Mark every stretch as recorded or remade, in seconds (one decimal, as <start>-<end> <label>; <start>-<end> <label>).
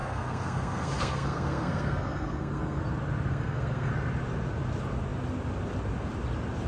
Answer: 0.0-2.8 remade; 2.8-3.3 recorded; 3.3-3.9 remade; 3.9-6.7 recorded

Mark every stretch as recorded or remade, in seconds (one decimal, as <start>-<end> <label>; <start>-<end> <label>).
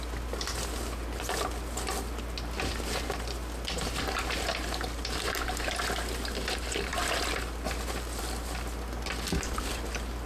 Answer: 0.0-10.3 recorded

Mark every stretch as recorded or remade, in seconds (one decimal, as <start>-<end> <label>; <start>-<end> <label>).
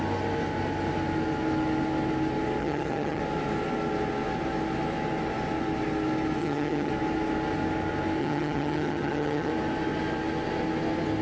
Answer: 0.0-2.6 recorded; 2.6-3.2 remade; 3.2-6.4 recorded; 6.4-6.9 remade; 6.9-8.2 recorded; 8.2-9.5 remade; 9.5-11.2 recorded